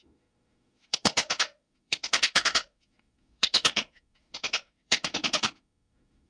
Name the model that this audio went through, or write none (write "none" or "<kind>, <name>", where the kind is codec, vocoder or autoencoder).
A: autoencoder, DAC-VAE